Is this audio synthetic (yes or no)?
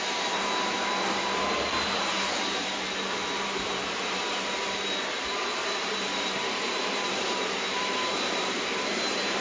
yes